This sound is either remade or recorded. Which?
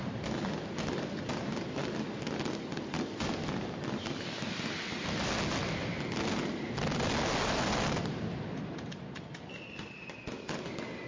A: recorded